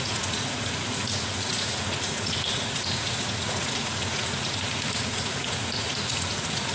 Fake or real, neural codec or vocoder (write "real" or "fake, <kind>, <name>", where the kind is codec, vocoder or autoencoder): fake, vocoder, Vocos